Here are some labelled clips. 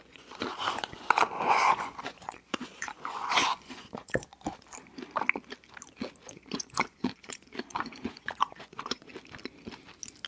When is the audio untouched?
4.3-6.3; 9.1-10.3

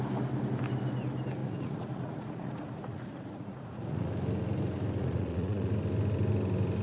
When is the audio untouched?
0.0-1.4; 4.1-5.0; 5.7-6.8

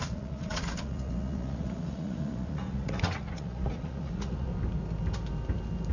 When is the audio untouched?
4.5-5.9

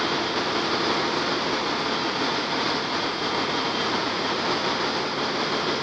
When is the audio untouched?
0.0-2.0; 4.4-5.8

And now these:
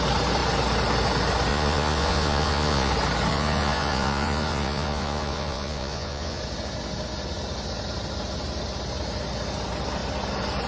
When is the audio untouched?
0.0-1.5; 2.9-3.3; 6.4-10.7

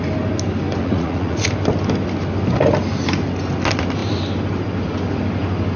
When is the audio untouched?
0.0-0.8; 1.5-5.8

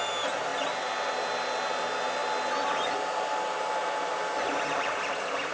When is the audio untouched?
0.0-5.5